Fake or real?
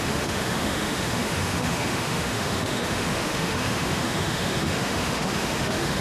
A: fake